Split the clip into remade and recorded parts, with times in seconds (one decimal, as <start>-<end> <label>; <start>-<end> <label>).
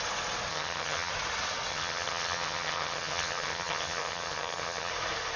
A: 0.0-0.5 recorded; 0.5-1.1 remade; 1.1-1.7 recorded; 1.7-4.9 remade; 4.9-5.4 recorded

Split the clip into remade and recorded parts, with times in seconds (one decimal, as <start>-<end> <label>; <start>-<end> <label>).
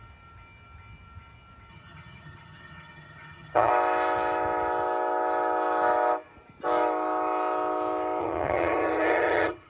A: 0.0-1.7 recorded; 1.7-3.7 remade; 3.7-8.2 recorded; 8.2-9.7 remade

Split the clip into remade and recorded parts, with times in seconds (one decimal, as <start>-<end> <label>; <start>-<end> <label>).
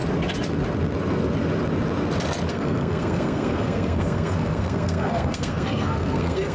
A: 0.0-2.5 recorded; 2.5-6.5 remade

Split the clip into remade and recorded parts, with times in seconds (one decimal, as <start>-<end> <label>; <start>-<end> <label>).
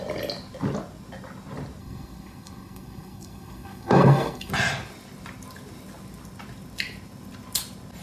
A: 0.0-1.8 recorded; 1.8-4.5 remade; 4.5-8.0 recorded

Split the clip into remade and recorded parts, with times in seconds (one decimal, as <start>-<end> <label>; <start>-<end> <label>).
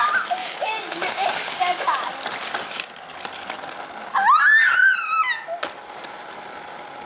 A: 0.0-0.4 recorded; 0.4-2.1 remade; 2.1-7.1 recorded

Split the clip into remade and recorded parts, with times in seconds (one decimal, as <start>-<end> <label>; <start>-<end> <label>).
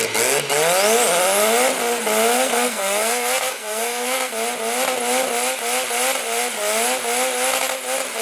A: 0.0-2.3 recorded; 2.3-4.3 remade; 4.3-8.2 recorded